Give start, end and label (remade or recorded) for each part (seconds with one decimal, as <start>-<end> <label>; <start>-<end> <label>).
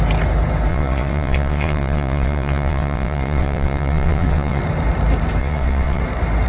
0.0-0.7 recorded; 0.7-4.6 remade; 4.6-5.4 recorded; 5.4-6.0 remade; 6.0-6.5 recorded